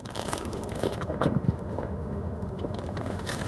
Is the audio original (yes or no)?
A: no